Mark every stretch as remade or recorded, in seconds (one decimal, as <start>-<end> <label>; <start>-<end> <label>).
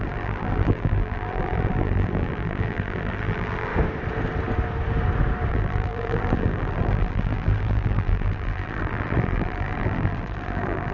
0.0-3.7 remade; 3.7-5.5 recorded; 5.5-10.9 remade